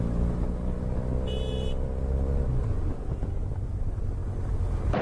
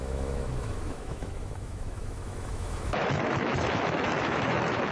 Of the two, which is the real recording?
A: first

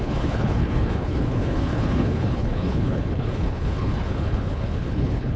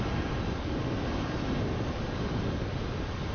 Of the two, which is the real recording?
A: second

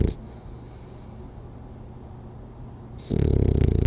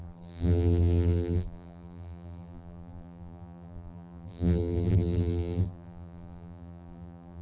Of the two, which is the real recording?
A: first